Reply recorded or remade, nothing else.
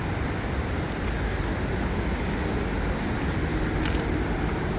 recorded